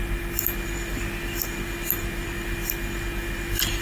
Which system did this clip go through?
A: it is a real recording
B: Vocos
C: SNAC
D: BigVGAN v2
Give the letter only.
A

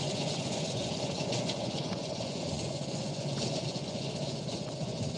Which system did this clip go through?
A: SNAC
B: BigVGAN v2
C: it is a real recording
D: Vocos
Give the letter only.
D